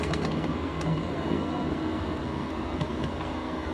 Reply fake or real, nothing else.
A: fake